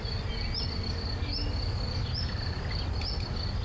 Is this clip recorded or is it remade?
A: recorded